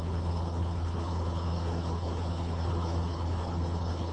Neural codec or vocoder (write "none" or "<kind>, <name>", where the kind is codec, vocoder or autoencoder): codec, HILCodec